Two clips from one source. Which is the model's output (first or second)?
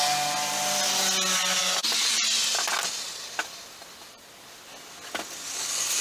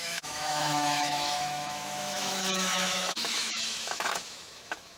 second